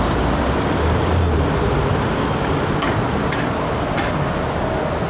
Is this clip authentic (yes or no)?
yes